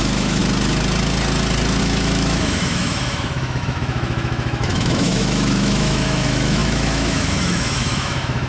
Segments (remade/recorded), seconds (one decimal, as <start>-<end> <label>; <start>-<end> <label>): 0.0-0.4 remade; 0.4-1.8 recorded; 1.8-8.5 remade